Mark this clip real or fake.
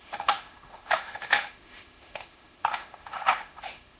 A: fake